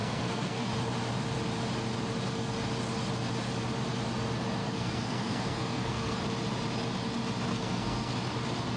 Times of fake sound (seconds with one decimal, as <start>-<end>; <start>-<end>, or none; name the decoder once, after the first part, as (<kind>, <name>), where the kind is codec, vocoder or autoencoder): 0.0-0.7 (codec, SNAC); 4.6-6.2; 7.5-8.1